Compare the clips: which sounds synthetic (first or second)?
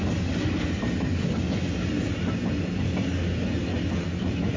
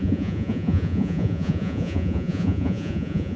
second